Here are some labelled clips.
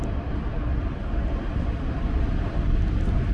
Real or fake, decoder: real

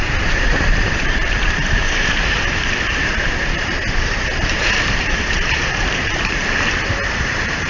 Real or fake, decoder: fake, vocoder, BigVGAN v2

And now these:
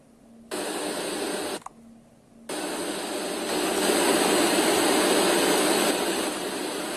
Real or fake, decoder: real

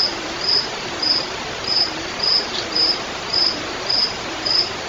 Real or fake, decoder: fake, vocoder, BigVGAN v2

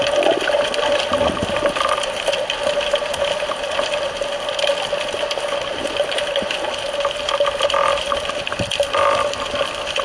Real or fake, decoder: fake, vocoder, BigVGAN v2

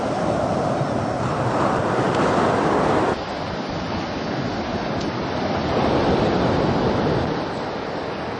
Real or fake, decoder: real